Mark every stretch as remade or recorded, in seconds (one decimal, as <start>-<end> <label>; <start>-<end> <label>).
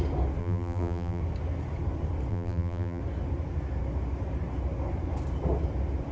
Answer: 0.0-0.4 recorded; 0.4-1.2 remade; 1.2-2.3 recorded; 2.3-3.0 remade; 3.0-6.1 recorded